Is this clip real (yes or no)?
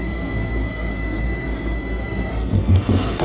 no